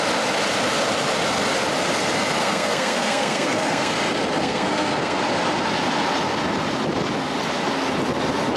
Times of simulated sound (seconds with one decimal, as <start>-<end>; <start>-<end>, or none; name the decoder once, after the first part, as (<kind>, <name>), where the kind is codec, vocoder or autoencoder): 2.4-3.9 (codec, SNAC); 4.4-5.2